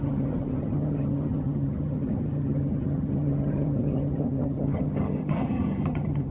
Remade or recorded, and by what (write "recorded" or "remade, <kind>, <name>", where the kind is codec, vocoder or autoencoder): remade, vocoder, HiFi-GAN